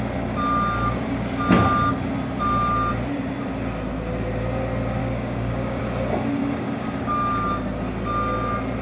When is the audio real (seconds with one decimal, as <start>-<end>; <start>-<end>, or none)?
0.0-5.0; 5.8-6.4; 7.1-8.8